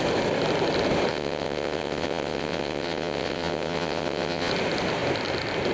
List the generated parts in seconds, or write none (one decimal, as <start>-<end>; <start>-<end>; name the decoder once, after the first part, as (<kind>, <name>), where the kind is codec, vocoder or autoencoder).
1.1-4.5 (vocoder, WaveNeXt)